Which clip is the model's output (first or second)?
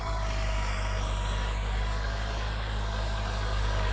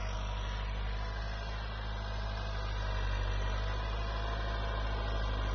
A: first